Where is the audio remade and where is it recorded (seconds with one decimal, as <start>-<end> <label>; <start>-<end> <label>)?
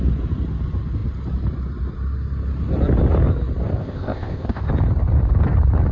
0.0-3.8 recorded; 3.8-4.7 remade; 4.7-5.9 recorded